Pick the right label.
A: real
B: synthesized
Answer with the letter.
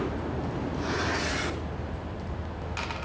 A